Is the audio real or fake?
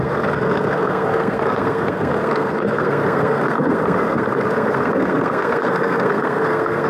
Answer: fake